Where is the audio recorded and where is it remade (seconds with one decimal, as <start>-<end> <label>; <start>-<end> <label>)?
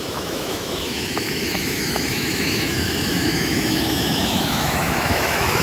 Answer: 0.0-5.6 remade